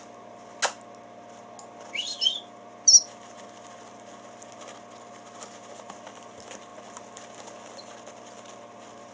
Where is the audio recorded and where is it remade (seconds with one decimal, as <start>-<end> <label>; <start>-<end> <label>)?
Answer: 0.0-9.1 recorded